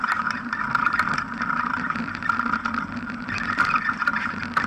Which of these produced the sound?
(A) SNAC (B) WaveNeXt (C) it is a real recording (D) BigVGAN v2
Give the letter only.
D